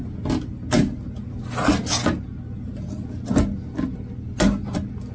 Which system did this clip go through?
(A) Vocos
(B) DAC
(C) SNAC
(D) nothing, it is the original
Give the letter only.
D